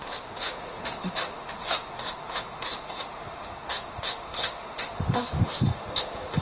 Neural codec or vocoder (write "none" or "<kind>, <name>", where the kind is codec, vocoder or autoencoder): autoencoder, DAC-VAE